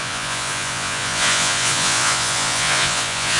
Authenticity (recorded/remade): remade